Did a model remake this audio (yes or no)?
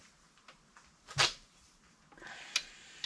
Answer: no